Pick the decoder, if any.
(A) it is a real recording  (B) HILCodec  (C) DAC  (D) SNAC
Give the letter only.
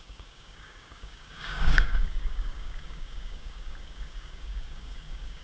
C